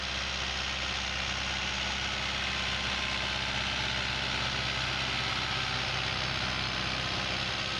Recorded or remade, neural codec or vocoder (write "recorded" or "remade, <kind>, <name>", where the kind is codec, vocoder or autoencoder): recorded